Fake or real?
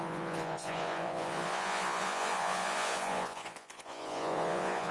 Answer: fake